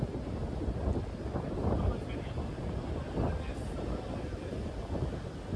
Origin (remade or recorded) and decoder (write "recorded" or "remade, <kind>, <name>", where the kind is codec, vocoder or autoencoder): recorded